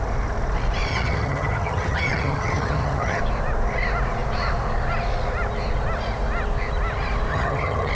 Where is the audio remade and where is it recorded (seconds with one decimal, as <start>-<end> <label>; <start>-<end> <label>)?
0.0-0.9 recorded; 0.9-3.2 remade; 3.2-7.3 recorded; 7.3-7.9 remade